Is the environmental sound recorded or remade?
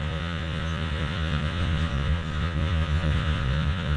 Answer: remade